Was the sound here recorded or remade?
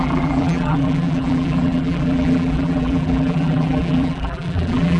remade